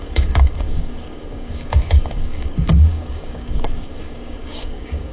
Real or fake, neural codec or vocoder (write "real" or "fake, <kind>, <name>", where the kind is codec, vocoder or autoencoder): fake, codec, DAC